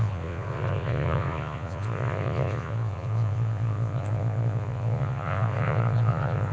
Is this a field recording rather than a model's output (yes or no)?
no